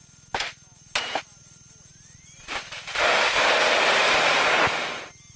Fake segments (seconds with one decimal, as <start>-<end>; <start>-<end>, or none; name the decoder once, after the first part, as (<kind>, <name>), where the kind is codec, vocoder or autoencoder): none